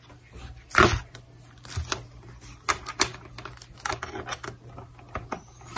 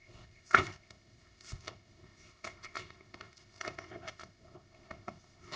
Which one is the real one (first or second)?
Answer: first